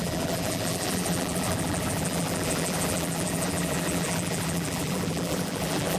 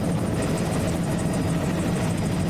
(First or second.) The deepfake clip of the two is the first